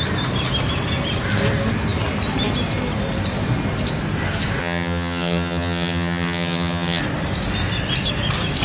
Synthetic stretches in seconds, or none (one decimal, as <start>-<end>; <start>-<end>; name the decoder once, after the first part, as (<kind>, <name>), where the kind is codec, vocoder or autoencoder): 4.6-7.0 (vocoder, HiFi-GAN)